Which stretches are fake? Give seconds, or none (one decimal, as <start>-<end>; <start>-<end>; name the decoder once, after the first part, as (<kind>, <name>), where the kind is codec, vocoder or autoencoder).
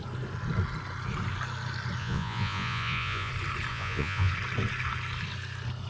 2.0-3.3 (vocoder, Vocos); 3.7-4.3